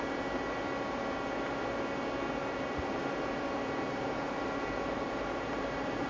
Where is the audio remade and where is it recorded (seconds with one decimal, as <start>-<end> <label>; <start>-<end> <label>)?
0.0-2.4 recorded; 2.4-6.1 remade